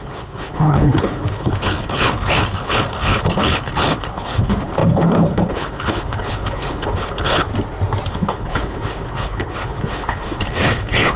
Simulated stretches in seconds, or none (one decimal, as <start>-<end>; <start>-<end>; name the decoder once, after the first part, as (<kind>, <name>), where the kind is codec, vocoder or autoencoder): 0.0-7.5 (codec, HILCodec); 8.1-11.2